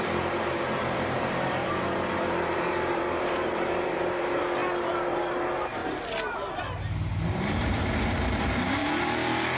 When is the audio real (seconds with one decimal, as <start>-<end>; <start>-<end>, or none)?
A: 1.6-2.4; 5.8-6.6; 8.8-9.6